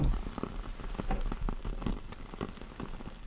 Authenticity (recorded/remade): recorded